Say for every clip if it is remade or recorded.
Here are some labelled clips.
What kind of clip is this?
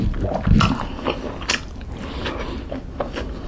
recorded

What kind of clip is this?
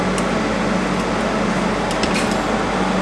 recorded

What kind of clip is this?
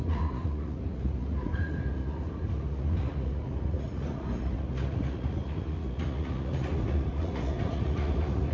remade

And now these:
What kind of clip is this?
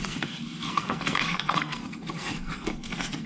remade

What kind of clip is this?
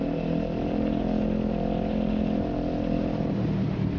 recorded